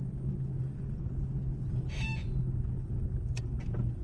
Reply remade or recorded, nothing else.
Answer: recorded